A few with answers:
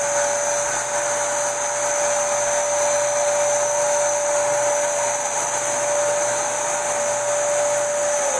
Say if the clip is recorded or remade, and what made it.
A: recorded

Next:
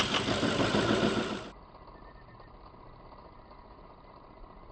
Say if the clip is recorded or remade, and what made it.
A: remade, vocoder, BigVGAN v2